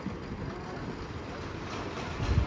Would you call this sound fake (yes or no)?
no